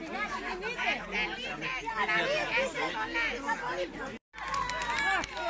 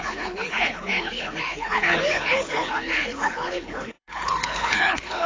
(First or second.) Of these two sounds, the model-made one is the second